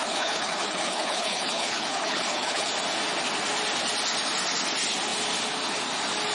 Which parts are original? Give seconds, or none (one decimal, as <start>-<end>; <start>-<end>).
2.7-6.3